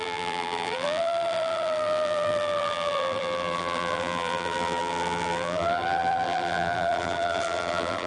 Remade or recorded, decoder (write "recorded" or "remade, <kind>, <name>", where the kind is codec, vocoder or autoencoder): remade, vocoder, BigVGAN v2